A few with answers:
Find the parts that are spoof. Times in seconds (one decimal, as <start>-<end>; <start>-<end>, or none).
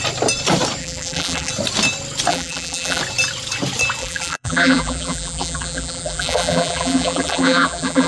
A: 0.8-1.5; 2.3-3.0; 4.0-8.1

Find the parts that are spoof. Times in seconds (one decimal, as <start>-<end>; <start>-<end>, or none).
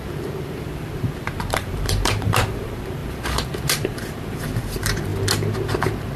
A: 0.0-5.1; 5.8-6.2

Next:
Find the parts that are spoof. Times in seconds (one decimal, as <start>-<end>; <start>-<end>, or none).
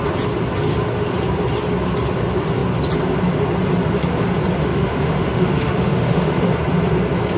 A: 4.6-6.5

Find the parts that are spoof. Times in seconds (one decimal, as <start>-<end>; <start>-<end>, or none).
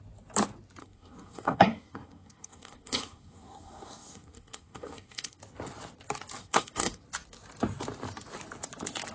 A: 0.8-5.4; 6.4-7.0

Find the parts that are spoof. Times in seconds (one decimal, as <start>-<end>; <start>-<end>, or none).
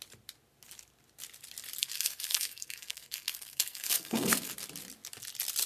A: 1.8-4.5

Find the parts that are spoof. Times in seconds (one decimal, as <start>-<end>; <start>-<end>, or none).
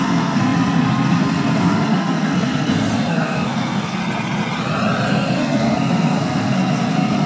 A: 0.0-4.0; 5.1-7.3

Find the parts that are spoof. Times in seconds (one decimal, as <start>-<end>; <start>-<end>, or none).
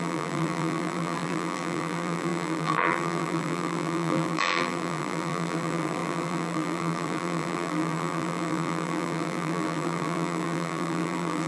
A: 0.0-11.5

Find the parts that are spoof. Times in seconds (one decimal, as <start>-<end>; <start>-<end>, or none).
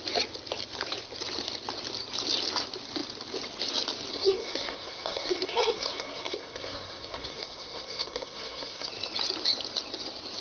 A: 4.1-8.9